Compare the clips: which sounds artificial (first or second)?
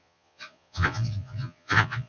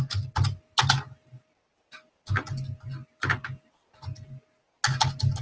first